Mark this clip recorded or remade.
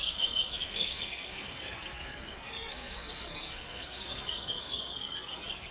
remade